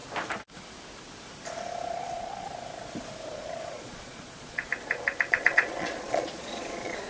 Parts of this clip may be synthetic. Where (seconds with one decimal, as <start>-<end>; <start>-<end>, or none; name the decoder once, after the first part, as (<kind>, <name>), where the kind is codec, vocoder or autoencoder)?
1.9-2.5 (vocoder, Vocos); 3.3-4.7; 5.3-7.1